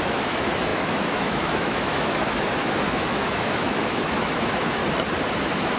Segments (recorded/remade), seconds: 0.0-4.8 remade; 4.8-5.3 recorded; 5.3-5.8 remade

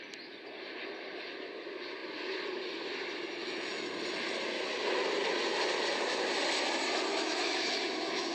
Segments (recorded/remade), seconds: 0.0-3.4 recorded; 3.4-3.9 remade; 3.9-7.1 recorded; 7.1-8.3 remade